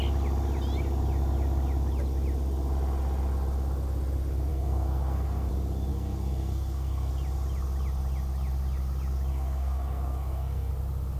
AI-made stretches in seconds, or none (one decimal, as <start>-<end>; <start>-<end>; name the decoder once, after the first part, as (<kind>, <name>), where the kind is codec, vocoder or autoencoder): 4.5-5.5 (codec, SNAC); 5.9-7.1; 9.3-10.7